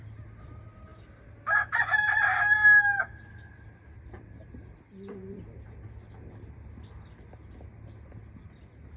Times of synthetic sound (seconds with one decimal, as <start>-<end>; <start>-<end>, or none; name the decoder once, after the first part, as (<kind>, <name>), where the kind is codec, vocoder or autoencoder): none